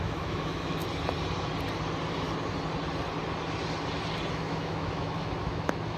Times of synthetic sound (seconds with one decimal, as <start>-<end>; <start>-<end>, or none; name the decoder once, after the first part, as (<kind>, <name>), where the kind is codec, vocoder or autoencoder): 0.0-0.8 (autoencoder, DAC-VAE); 4.3-6.0

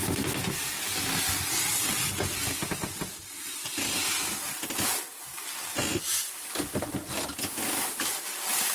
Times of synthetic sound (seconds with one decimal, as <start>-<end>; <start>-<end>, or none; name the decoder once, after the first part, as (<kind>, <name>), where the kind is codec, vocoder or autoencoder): none

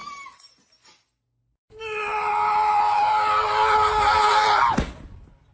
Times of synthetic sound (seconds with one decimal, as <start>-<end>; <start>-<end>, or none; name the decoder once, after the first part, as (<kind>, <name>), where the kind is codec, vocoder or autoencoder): none